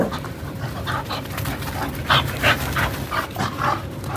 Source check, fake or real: real